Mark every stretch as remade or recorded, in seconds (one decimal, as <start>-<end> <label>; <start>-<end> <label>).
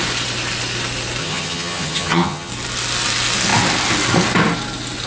0.0-1.2 recorded; 1.2-2.5 remade; 2.5-5.1 recorded